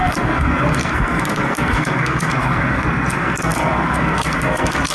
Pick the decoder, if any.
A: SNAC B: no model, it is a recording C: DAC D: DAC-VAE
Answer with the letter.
A